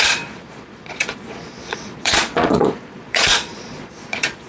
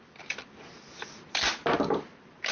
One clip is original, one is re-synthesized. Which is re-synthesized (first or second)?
first